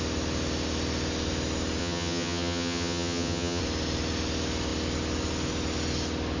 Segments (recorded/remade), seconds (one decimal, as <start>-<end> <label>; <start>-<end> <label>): 0.0-1.8 recorded; 1.8-3.6 remade; 3.6-6.4 recorded